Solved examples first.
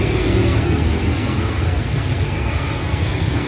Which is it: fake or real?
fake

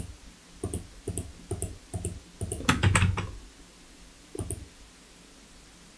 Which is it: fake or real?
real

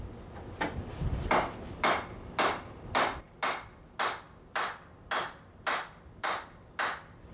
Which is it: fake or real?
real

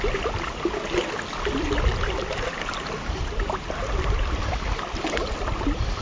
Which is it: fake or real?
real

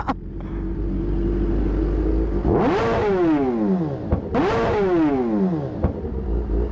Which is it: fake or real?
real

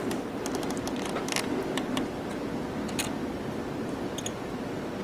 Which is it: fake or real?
real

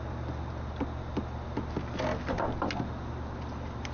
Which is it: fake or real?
real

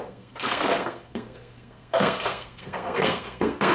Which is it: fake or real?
fake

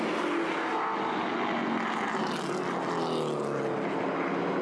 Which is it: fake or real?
real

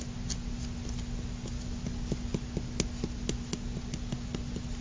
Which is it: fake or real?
real